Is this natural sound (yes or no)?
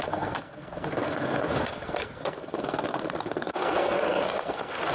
no